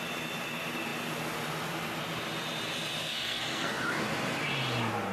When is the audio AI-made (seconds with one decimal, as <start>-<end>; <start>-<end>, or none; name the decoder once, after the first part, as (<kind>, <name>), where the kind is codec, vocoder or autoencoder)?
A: 3.0-3.8 (codec, SNAC)